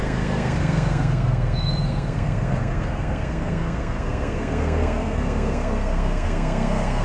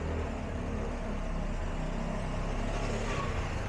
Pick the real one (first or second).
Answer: second